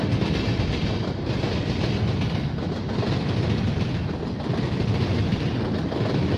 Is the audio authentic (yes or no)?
yes